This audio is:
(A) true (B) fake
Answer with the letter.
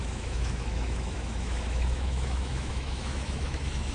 B